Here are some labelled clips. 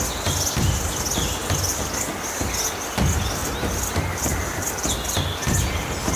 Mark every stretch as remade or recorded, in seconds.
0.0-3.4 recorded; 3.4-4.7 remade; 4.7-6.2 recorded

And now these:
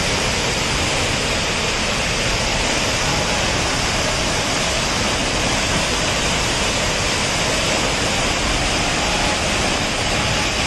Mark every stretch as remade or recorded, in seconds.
0.0-2.5 recorded; 2.5-3.1 remade; 3.1-5.2 recorded; 5.2-6.5 remade; 6.5-10.7 recorded

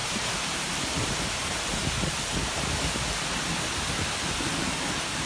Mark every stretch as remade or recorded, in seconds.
0.0-1.1 remade; 1.1-5.3 recorded

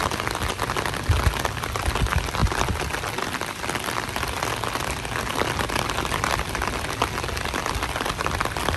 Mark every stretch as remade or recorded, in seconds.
0.0-8.8 recorded

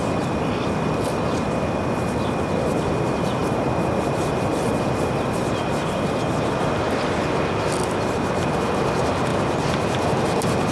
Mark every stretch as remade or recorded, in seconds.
0.0-3.4 recorded; 3.4-6.3 remade; 6.3-10.7 recorded

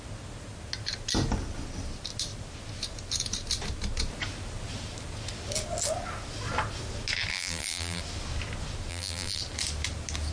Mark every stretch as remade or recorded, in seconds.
0.0-7.3 recorded; 7.3-8.0 remade; 8.0-8.9 recorded; 8.9-9.4 remade; 9.4-10.3 recorded

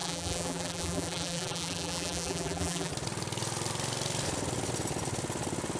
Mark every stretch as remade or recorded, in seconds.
0.0-2.9 remade; 2.9-5.8 recorded

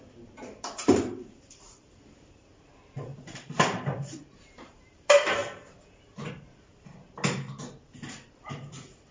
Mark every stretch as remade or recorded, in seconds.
0.0-2.7 remade; 2.7-3.4 recorded; 3.4-5.4 remade; 5.4-6.3 recorded; 6.3-6.7 remade; 6.7-8.3 recorded; 8.3-9.1 remade